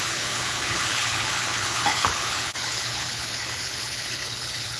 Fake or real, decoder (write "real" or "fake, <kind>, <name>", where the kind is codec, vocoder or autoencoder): fake, codec, HILCodec